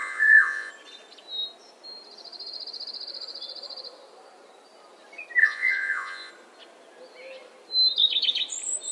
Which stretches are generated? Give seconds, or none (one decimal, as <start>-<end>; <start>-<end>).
0.0-0.7; 5.4-6.3